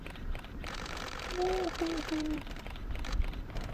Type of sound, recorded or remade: remade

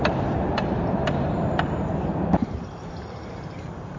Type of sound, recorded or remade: remade